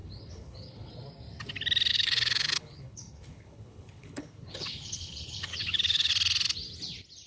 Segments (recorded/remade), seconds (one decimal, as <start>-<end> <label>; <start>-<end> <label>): 0.0-0.9 remade; 0.9-1.9 recorded; 1.9-6.1 remade; 6.1-7.3 recorded